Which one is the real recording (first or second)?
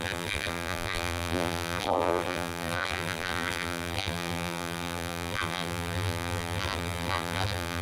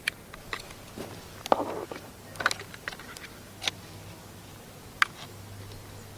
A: second